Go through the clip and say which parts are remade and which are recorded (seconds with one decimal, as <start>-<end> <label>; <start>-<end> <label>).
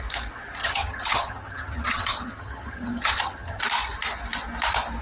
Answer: 0.0-0.6 recorded; 0.6-3.6 remade; 3.6-5.0 recorded